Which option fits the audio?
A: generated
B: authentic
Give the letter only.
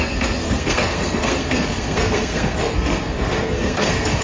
A